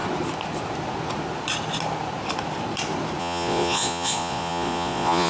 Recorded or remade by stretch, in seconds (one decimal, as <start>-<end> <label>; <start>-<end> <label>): 0.0-3.2 recorded; 3.2-5.3 remade